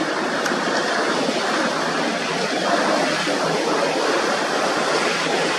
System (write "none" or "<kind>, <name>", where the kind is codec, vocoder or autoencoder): none